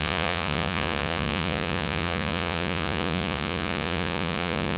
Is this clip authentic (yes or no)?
no